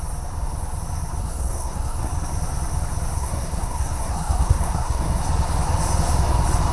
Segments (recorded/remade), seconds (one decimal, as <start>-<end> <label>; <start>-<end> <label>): 0.0-1.2 recorded; 1.2-2.1 remade; 2.1-3.2 recorded; 3.2-5.2 remade; 5.2-6.7 recorded